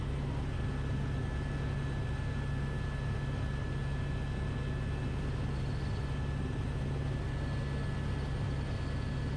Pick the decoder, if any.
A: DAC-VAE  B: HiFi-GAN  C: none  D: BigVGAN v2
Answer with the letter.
C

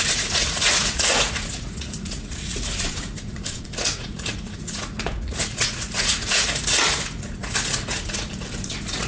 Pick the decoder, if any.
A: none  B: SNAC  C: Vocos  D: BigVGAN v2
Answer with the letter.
C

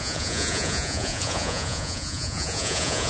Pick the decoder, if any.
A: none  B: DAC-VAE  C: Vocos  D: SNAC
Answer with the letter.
C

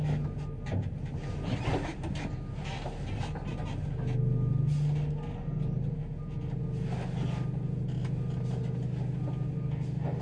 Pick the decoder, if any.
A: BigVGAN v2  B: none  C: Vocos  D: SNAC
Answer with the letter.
B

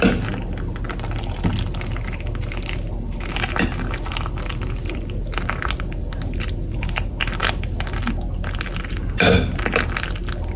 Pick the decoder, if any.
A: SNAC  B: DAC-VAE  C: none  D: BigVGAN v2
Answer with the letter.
C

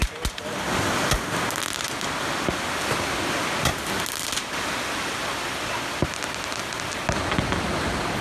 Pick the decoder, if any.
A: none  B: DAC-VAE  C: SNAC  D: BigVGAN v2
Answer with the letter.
A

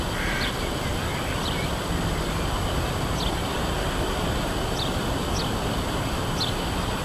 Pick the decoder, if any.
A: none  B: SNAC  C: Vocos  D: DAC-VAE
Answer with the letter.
A